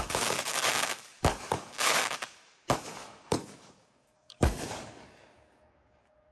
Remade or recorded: remade